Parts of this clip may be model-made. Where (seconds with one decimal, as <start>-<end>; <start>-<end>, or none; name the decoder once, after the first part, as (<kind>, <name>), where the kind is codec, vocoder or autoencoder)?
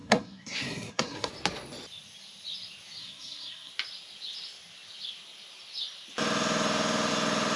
0.0-1.3 (codec, SNAC); 3.0-3.7